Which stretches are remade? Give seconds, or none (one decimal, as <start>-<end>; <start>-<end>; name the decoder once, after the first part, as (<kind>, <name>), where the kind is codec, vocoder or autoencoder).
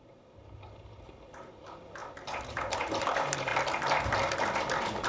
none